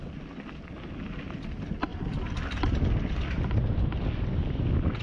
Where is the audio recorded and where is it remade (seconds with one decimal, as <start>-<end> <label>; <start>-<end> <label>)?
0.0-5.0 recorded